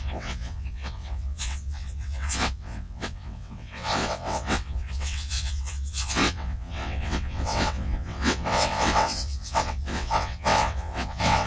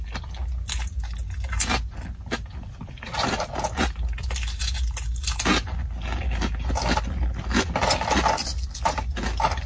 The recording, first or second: second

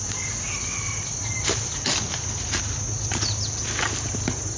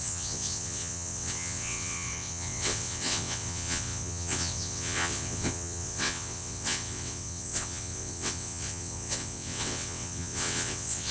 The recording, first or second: first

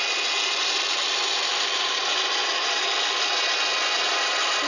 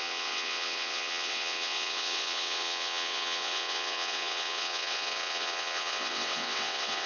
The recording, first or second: first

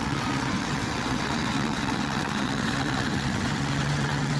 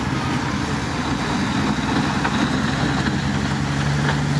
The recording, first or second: second